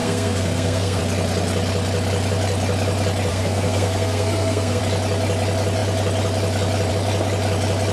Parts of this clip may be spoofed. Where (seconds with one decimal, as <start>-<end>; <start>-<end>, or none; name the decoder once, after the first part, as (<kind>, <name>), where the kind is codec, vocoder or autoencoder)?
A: 0.0-1.0 (codec, SNAC); 3.3-4.8